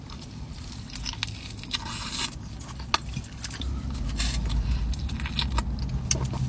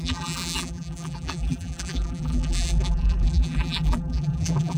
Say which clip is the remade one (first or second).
second